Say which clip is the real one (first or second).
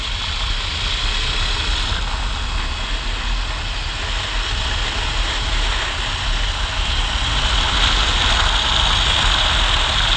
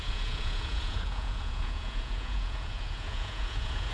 first